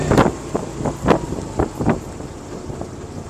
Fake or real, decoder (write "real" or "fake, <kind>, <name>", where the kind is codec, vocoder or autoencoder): real